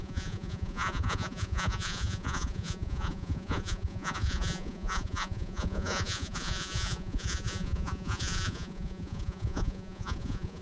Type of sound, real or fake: fake